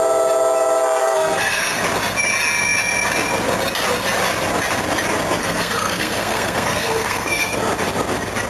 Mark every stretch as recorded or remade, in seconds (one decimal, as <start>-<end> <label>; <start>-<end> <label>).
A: 0.0-1.0 recorded; 1.0-1.8 remade; 1.8-5.4 recorded; 5.4-7.6 remade; 7.6-8.5 recorded

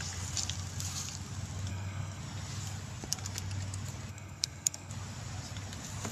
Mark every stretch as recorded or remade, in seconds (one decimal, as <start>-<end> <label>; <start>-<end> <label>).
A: 0.0-1.7 recorded; 1.7-2.2 remade; 2.2-4.1 recorded; 4.1-4.9 remade; 4.9-6.1 recorded

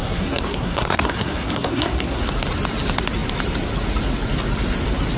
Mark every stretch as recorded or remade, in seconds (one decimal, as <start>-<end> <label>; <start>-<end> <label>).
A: 0.0-2.2 remade; 2.2-5.2 recorded

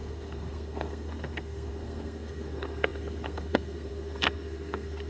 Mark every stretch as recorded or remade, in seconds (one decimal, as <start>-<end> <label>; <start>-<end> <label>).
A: 0.0-5.1 remade

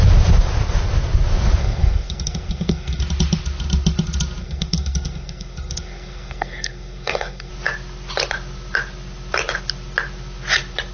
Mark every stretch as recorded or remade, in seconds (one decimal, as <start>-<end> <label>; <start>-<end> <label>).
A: 0.0-1.6 recorded; 1.6-3.0 remade; 3.0-4.4 recorded; 4.4-7.5 remade; 7.5-10.9 recorded

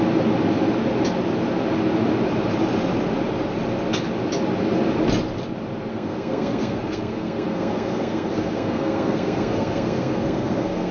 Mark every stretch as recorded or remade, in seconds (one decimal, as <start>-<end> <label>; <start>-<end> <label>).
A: 0.0-5.9 recorded; 5.9-10.9 remade